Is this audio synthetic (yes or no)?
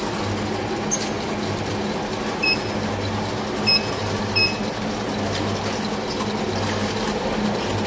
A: no